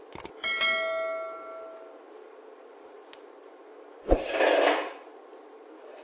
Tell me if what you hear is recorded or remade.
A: recorded